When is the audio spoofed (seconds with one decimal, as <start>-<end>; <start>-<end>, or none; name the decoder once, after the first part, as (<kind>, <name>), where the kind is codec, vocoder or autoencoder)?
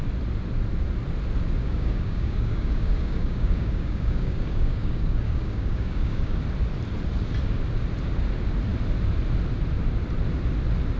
1.6-6.4 (codec, DAC)